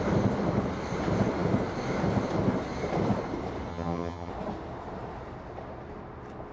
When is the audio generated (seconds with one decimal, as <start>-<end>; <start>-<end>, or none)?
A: 3.7-4.3